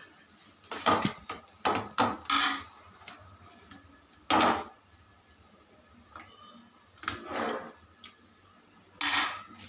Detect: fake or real real